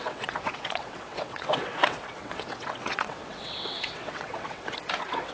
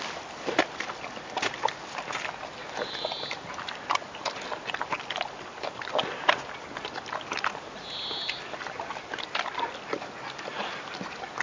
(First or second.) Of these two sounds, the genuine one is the second